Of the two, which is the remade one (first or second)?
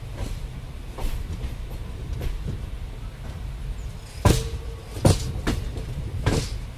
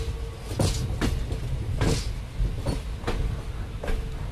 first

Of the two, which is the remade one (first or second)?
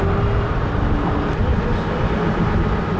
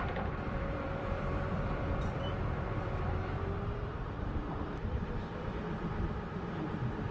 second